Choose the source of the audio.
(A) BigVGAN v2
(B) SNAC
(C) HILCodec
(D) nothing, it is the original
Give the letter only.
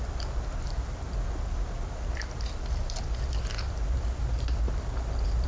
D